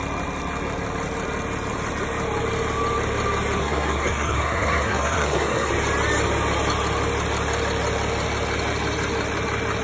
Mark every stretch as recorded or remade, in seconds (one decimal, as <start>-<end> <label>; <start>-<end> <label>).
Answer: 0.0-3.6 recorded; 3.6-5.7 remade; 5.7-9.8 recorded